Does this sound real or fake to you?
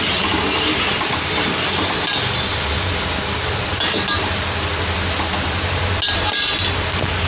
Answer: real